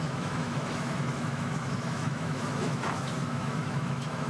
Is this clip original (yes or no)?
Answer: no